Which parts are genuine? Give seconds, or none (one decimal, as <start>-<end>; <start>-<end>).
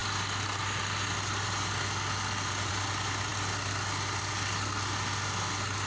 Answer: 0.0-5.9